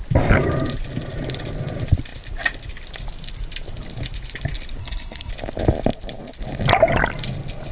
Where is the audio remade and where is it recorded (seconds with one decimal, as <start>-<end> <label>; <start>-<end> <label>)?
0.0-4.8 recorded; 4.8-5.3 remade; 5.3-7.7 recorded